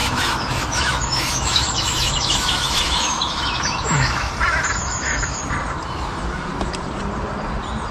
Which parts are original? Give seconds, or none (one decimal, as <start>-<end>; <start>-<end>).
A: 4.3-4.8; 5.4-7.9